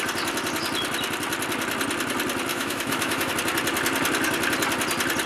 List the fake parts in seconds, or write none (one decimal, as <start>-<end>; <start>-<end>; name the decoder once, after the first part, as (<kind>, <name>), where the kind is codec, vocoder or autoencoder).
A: 2.5-3.3 (autoencoder, DAC-VAE)